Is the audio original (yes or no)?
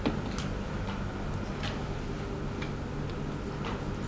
yes